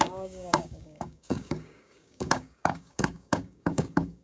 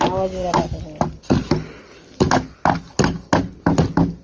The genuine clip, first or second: second